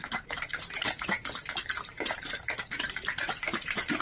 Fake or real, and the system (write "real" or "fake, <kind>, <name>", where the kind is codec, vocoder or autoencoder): fake, vocoder, BigVGAN v2